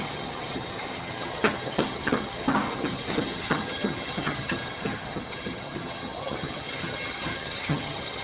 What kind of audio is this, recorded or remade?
remade